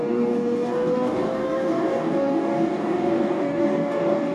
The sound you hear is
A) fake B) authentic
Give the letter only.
A